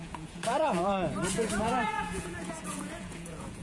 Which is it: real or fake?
fake